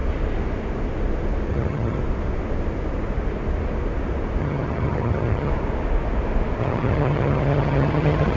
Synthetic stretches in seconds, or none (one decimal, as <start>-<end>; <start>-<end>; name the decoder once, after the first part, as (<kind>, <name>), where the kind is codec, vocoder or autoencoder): 1.5-2.0 (vocoder, HiFi-GAN); 4.4-5.5; 6.6-8.4